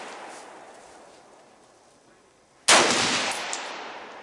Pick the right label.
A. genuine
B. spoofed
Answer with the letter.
A